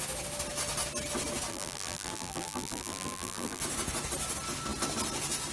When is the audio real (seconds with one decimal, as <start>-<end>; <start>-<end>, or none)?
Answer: 0.0-1.5; 3.6-5.5